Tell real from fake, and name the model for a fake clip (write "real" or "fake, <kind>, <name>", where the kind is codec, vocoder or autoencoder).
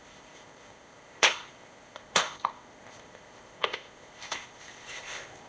fake, codec, ZipCodec